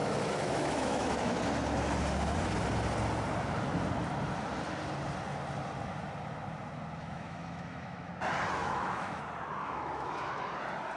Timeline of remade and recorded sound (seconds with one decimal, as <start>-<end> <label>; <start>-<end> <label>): 0.0-1.4 remade; 1.4-7.0 recorded; 7.0-8.1 remade; 8.1-8.6 recorded; 8.6-9.2 remade; 9.2-9.6 recorded; 9.6-10.5 remade; 10.5-11.0 recorded